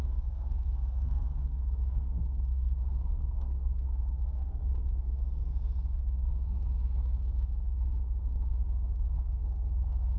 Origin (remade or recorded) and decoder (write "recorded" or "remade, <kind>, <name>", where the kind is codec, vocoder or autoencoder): remade, codec, SNAC